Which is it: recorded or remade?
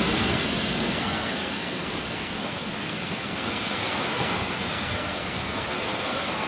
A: remade